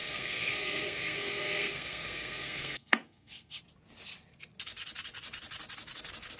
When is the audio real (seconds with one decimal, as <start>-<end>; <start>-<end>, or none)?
3.6-6.4

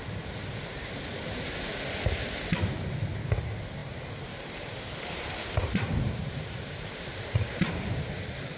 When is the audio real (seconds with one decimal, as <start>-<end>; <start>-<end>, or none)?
0.0-3.8

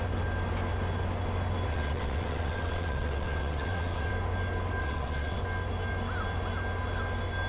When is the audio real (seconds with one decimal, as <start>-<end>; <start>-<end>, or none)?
0.0-1.7; 4.1-4.8; 5.4-7.5

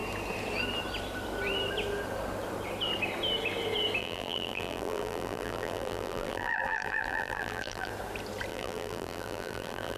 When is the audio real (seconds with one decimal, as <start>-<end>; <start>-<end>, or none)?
0.0-4.0; 7.9-8.5

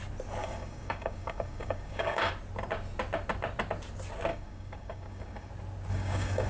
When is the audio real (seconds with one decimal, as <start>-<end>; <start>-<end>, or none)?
0.0-0.4; 2.3-4.3; 5.5-5.9